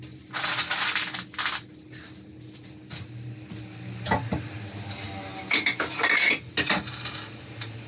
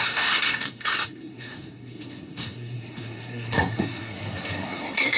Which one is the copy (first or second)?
second